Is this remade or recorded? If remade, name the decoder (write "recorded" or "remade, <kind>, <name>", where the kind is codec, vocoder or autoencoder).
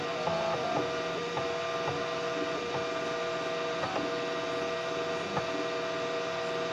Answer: recorded